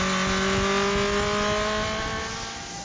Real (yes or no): yes